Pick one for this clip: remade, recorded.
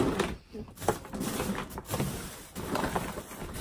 recorded